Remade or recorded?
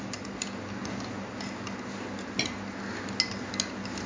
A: recorded